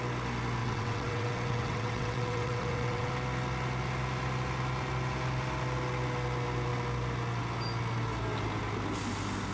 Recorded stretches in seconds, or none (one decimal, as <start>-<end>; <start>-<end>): 0.0-0.6; 3.1-9.5

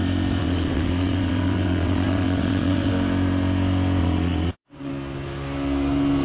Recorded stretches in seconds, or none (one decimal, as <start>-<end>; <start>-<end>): 0.0-0.4; 2.9-4.0; 4.9-6.2

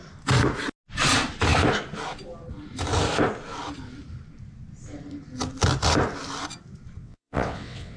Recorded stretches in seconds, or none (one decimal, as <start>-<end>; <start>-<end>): 0.0-7.0

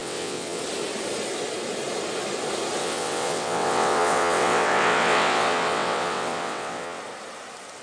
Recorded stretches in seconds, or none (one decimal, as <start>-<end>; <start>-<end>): 0.6-2.8; 7.0-7.8

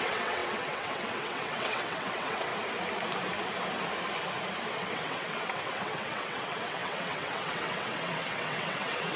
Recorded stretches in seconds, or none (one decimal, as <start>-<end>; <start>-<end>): 2.5-4.7